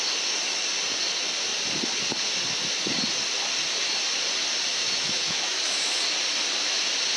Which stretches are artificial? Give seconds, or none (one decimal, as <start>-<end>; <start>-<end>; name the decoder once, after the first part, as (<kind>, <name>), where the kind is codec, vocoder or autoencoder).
4.7-6.0 (autoencoder, DAC-VAE)